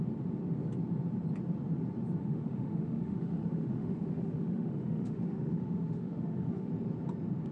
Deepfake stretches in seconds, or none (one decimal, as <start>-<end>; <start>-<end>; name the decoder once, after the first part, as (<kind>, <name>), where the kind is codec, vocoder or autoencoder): 2.2-6.7 (autoencoder, DAC-VAE)